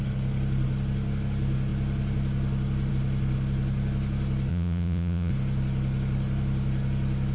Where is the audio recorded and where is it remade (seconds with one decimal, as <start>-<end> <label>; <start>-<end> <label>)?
0.0-4.5 recorded; 4.5-5.3 remade; 5.3-7.3 recorded